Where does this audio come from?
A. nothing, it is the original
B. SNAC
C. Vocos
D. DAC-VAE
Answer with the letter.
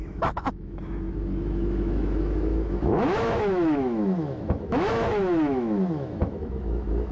D